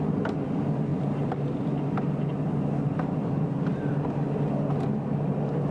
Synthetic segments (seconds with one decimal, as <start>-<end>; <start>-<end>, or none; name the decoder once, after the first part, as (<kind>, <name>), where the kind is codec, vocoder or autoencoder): 3.2-3.9 (vocoder, BigVGAN v2)